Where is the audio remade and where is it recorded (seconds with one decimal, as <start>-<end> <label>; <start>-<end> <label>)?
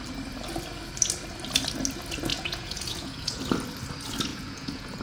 0.0-2.3 recorded; 2.3-3.4 remade; 3.4-4.3 recorded; 4.3-5.0 remade